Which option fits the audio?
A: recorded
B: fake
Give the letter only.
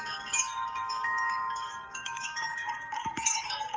B